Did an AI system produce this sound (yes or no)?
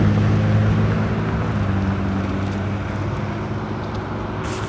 no